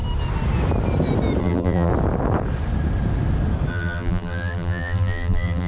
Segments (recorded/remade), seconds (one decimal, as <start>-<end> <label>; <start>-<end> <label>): 0.0-1.4 recorded; 1.4-1.9 remade; 1.9-3.7 recorded; 3.7-5.7 remade